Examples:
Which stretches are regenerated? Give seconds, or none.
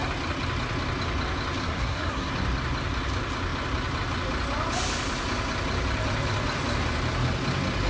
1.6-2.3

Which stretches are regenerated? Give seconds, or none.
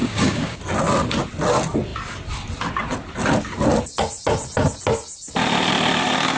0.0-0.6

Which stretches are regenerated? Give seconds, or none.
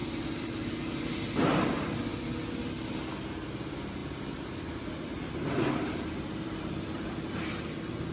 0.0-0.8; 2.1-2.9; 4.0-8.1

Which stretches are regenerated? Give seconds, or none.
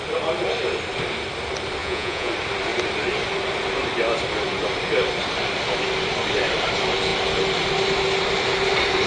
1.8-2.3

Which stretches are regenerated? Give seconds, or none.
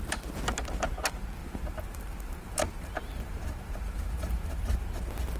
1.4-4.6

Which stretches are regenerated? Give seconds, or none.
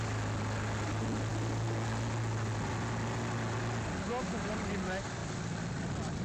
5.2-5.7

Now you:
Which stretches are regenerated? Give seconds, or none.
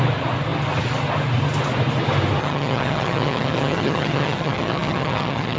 2.4-5.6